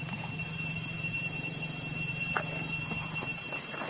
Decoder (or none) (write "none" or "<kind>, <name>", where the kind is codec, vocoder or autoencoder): vocoder, BigVGAN v2